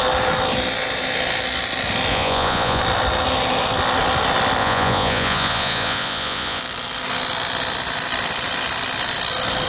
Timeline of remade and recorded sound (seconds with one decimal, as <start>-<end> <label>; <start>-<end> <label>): 0.0-2.1 recorded; 2.1-2.8 remade; 2.8-4.6 recorded; 4.6-6.6 remade; 6.6-9.7 recorded